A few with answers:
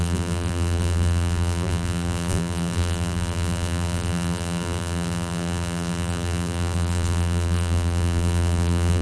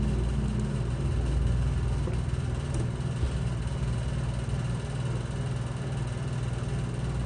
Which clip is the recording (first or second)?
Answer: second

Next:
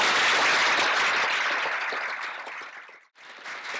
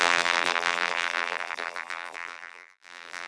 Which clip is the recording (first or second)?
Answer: first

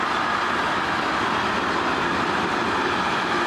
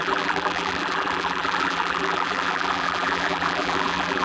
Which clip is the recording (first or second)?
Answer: first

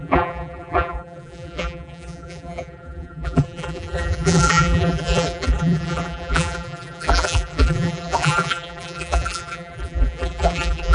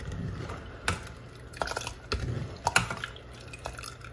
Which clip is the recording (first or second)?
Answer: second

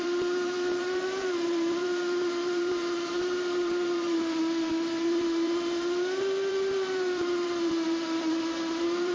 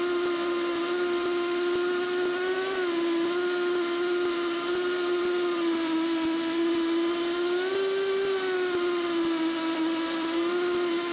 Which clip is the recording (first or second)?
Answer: second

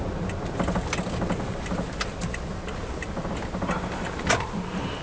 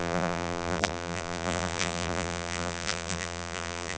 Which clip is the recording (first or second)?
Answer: first